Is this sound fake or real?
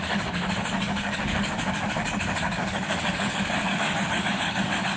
fake